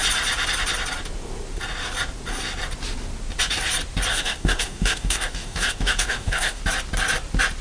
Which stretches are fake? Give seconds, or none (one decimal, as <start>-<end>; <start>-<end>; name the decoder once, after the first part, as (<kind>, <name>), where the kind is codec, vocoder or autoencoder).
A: 4.1-6.6 (codec, DAC)